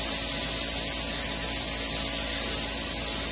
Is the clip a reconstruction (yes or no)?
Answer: no